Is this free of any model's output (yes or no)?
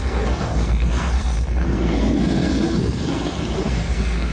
no